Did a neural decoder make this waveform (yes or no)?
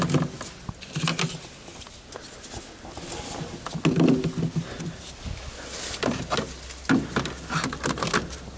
no